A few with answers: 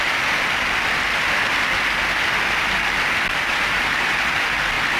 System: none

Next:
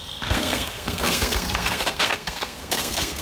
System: codec, SNAC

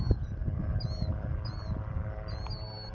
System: none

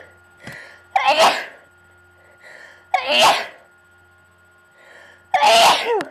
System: none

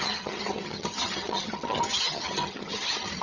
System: vocoder, HiFi-GAN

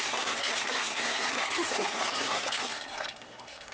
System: codec, SNAC